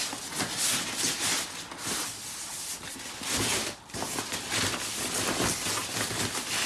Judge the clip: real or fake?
real